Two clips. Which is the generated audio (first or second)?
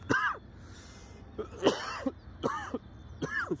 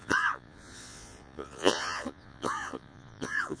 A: second